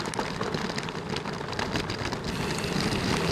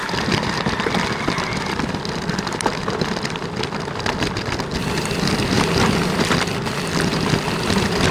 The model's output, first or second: second